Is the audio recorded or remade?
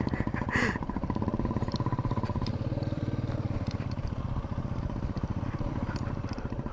remade